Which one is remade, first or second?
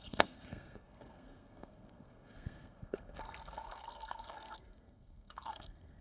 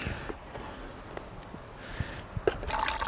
first